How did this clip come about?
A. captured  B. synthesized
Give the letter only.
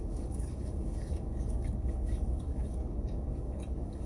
B